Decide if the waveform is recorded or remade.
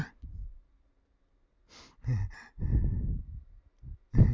recorded